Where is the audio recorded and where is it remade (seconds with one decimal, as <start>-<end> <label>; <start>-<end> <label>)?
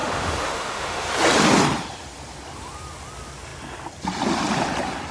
0.0-1.1 remade; 1.1-5.1 recorded